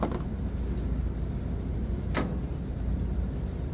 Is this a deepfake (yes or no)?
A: no